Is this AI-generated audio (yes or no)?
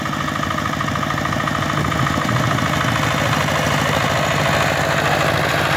no